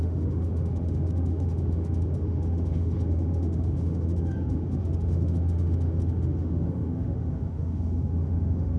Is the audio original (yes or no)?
no